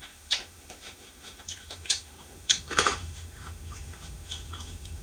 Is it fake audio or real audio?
fake